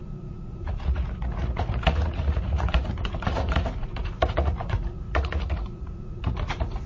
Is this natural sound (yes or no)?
no